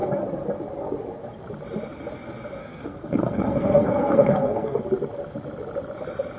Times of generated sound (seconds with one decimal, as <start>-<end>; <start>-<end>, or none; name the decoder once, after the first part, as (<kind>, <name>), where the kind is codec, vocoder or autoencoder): 2.6-4.8 (codec, SNAC)